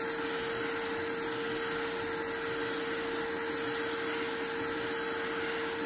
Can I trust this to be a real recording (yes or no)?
yes